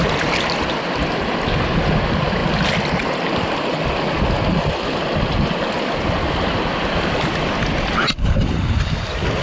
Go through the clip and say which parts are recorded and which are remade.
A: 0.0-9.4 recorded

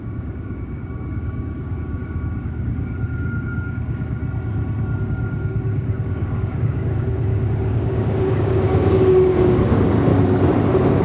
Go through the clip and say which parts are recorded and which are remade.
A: 0.0-4.2 remade; 4.2-5.0 recorded; 5.0-10.1 remade; 10.1-11.0 recorded

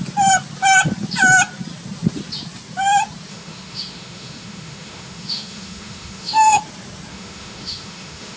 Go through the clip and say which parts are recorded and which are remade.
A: 0.0-3.3 recorded; 3.3-6.6 remade; 6.6-7.1 recorded; 7.1-8.4 remade

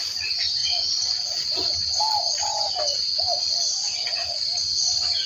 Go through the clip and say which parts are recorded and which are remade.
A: 0.0-5.3 recorded

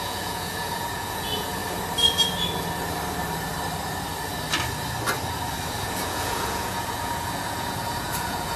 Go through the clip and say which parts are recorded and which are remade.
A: 0.0-1.6 remade; 1.6-5.7 recorded; 5.7-8.6 remade

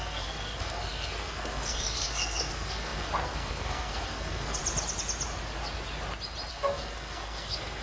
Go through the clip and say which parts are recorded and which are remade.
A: 0.0-4.6 remade; 4.6-6.5 recorded; 6.5-7.8 remade